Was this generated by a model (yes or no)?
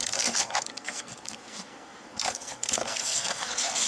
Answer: yes